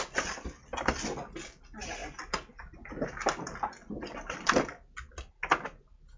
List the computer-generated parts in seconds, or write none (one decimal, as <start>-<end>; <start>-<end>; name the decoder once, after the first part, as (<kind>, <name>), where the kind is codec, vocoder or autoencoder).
none